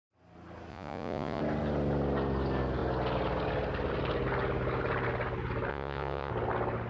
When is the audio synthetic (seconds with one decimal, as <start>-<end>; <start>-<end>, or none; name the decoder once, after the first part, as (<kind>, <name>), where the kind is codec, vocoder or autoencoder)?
0.7-1.4 (vocoder, Vocos); 5.7-6.3